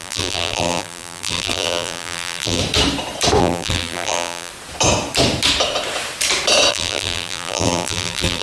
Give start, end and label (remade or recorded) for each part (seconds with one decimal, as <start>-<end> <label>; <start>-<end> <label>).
0.0-2.6 remade; 2.6-3.4 recorded; 3.4-4.5 remade; 4.5-6.7 recorded; 6.7-8.4 remade